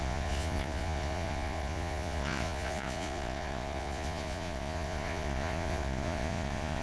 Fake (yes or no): yes